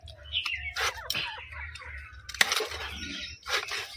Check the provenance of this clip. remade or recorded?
recorded